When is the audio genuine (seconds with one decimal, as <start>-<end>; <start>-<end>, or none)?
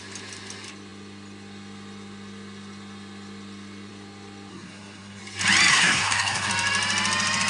0.0-4.5; 5.2-5.7; 6.5-7.5